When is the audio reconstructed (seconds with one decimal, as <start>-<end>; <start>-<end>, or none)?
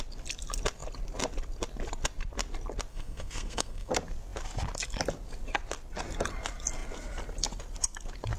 2.9-3.9